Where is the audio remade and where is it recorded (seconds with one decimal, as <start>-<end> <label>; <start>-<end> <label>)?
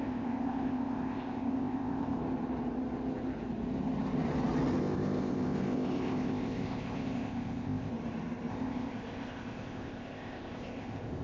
0.0-2.2 remade; 2.2-4.8 recorded; 4.8-7.9 remade; 7.9-8.5 recorded; 8.5-11.2 remade